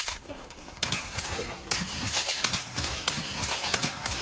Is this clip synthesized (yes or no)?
yes